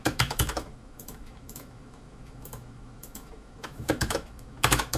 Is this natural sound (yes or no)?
no